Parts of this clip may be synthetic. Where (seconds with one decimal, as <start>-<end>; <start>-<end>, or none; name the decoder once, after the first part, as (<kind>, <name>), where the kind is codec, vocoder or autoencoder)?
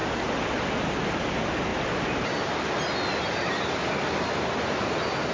none